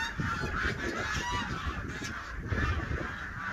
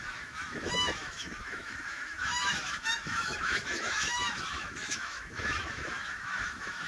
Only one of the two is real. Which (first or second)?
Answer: first